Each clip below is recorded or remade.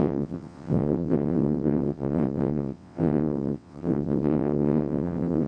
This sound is remade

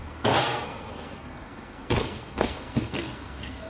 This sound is remade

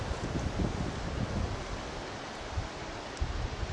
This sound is recorded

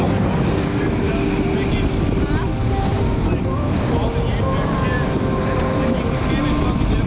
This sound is recorded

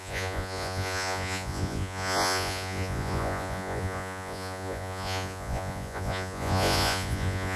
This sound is remade